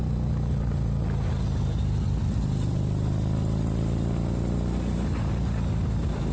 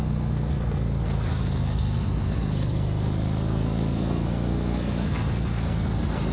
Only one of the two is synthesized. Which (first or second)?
second